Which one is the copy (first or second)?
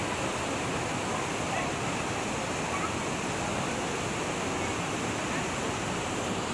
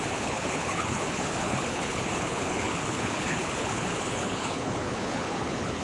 second